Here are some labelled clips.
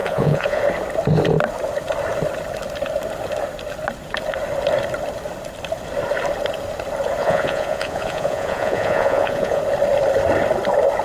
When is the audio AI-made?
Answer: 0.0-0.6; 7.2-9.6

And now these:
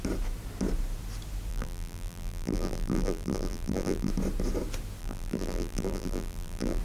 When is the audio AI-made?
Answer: 1.5-4.1; 5.0-6.8

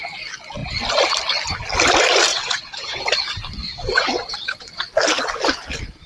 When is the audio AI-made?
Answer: 2.3-3.0; 3.6-4.8